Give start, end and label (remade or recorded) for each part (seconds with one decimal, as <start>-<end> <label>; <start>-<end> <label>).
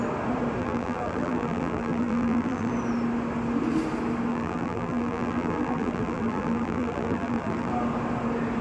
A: 0.0-0.6 recorded; 0.6-2.7 remade; 2.7-4.3 recorded; 4.3-7.7 remade; 7.7-8.6 recorded